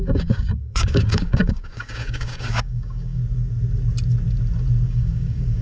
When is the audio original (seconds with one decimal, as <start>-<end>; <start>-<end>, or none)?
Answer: 3.2-4.9